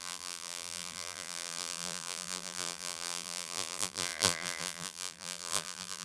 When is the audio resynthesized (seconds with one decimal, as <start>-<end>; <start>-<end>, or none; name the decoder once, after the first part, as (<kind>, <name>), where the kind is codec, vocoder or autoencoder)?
0.0-6.0 (vocoder, BigVGAN v2)